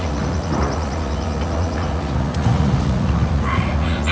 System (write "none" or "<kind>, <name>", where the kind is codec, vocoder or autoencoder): vocoder, Vocos